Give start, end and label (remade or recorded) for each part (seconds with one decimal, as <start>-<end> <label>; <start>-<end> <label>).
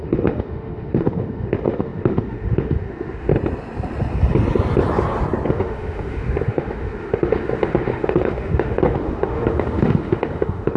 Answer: 0.0-3.3 remade; 3.3-5.5 recorded; 5.5-10.8 remade